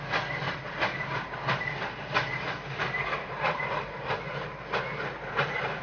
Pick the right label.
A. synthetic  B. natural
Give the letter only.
B